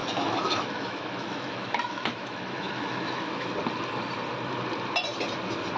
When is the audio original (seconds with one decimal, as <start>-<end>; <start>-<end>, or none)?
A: 3.5-5.8